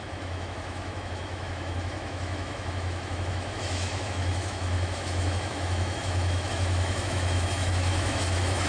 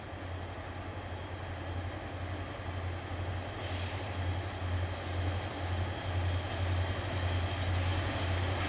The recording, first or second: second